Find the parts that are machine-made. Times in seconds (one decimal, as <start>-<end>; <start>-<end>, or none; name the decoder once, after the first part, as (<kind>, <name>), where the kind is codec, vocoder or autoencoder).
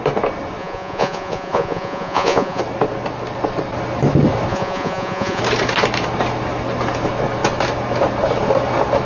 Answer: 0.6-2.6 (vocoder, Vocos); 4.5-5.4